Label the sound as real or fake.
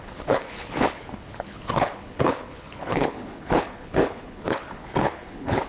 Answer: fake